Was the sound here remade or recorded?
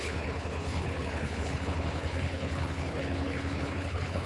remade